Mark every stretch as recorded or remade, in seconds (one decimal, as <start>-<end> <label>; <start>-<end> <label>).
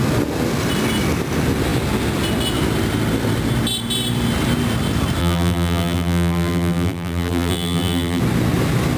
0.0-5.2 recorded; 5.2-8.2 remade; 8.2-9.0 recorded